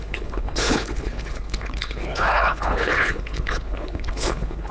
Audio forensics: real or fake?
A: fake